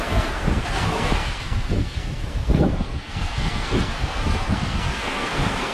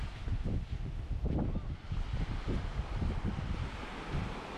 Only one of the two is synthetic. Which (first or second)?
first